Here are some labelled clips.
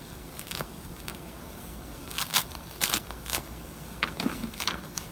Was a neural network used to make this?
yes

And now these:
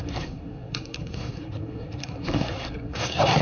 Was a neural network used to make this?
yes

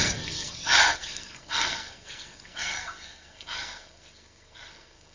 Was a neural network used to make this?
yes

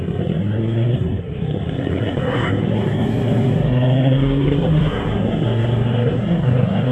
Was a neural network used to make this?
yes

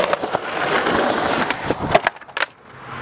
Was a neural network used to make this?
no